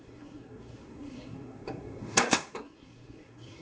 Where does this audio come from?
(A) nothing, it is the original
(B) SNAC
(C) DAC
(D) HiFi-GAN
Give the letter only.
B